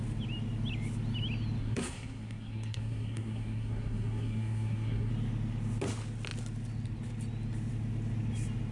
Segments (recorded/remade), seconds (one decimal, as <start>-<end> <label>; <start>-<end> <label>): 0.0-1.6 recorded; 1.6-5.1 remade; 5.1-8.7 recorded